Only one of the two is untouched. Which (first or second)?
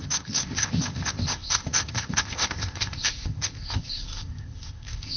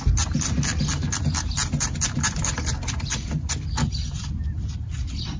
second